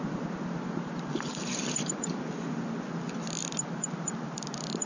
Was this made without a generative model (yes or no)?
yes